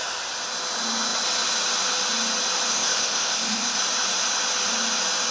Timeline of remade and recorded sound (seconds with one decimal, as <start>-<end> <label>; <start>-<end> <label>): 0.0-2.7 recorded; 2.7-3.8 remade; 3.8-5.3 recorded

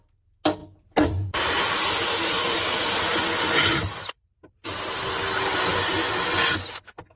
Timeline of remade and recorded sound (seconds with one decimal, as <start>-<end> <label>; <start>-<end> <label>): 0.0-0.6 recorded; 0.6-1.9 remade; 1.9-3.7 recorded; 3.7-4.8 remade; 4.8-7.2 recorded

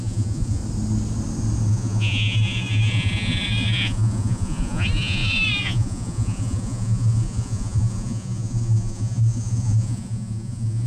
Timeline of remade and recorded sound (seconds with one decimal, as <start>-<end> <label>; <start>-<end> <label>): 0.0-0.6 remade; 0.6-1.7 recorded; 1.7-10.9 remade

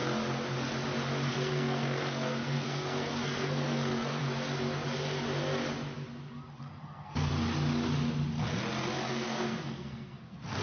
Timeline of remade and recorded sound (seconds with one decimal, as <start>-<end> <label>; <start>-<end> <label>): 0.0-1.3 recorded; 1.3-4.2 remade; 4.2-6.6 recorded; 6.6-7.3 remade; 7.3-9.1 recorded; 9.1-10.6 remade

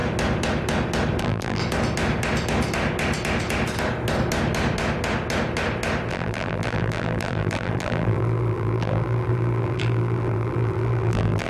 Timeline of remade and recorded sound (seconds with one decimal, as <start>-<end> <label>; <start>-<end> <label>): 0.0-1.2 recorded; 1.2-1.6 remade; 1.6-6.1 recorded; 6.1-11.5 remade